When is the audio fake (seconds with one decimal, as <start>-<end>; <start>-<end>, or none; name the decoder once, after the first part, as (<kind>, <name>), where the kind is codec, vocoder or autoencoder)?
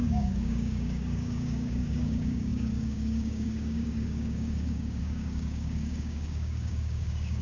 0.0-7.4 (codec, DAC)